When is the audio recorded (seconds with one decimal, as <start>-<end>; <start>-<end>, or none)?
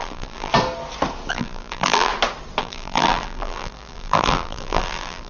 0.5-1.3; 2.1-2.6